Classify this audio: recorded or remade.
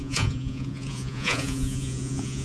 remade